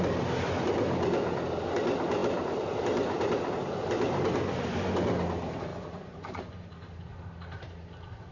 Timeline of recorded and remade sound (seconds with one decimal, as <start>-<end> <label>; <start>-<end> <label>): 0.0-5.7 recorded; 5.7-6.7 remade; 6.7-8.3 recorded